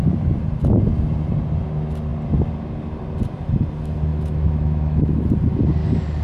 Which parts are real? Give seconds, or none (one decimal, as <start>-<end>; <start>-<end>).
0.0-4.1; 5.3-6.2